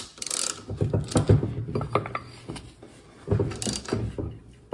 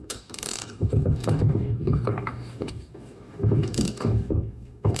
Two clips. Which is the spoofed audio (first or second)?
second